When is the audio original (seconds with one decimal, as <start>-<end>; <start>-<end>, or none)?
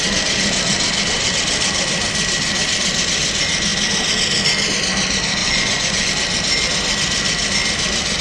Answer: 0.0-5.4; 6.1-8.2